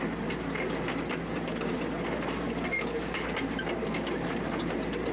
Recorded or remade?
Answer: recorded